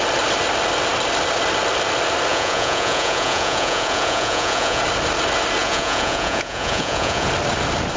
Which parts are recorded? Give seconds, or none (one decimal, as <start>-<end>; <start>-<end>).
0.0-2.3; 4.8-5.6; 7.3-8.0